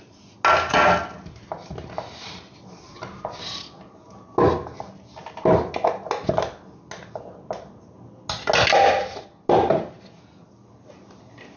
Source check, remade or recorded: recorded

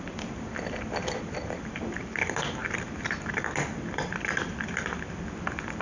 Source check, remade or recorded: recorded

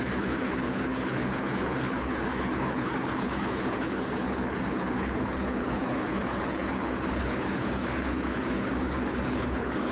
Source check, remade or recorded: remade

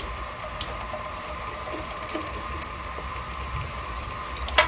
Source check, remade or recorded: recorded